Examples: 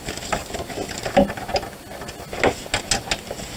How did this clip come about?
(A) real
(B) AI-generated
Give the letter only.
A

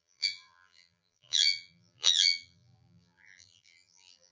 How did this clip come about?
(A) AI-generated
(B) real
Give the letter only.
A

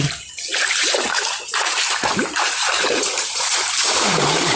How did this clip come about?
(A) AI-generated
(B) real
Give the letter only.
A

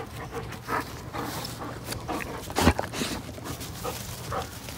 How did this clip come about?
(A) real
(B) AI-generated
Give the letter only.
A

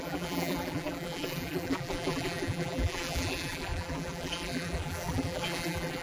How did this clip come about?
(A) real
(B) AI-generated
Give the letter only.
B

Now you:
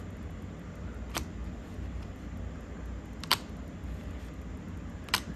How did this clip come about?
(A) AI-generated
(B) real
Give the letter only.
B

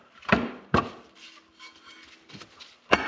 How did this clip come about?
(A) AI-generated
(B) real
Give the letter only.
A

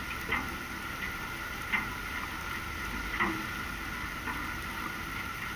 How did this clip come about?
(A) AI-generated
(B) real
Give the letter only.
B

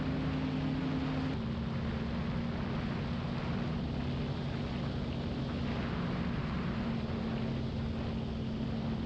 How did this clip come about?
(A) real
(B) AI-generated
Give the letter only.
A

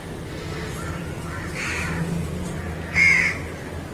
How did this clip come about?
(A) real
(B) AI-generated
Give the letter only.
A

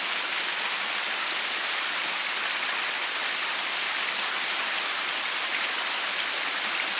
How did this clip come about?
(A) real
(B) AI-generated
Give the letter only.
B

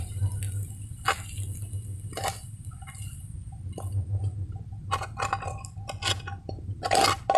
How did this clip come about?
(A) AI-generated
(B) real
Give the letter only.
B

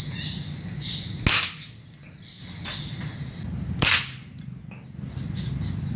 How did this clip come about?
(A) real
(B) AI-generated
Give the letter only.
A